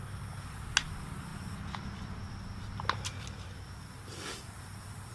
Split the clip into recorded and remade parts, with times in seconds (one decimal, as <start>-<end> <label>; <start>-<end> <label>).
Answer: 0.0-5.1 recorded